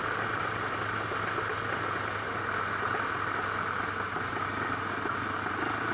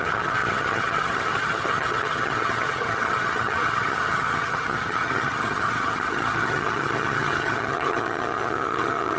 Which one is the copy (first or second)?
second